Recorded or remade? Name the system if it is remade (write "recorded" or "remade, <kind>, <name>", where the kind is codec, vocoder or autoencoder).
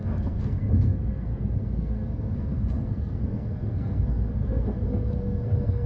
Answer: remade, codec, SNAC